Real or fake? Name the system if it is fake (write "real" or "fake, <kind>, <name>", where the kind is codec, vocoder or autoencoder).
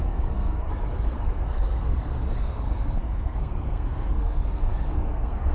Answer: fake, codec, SNAC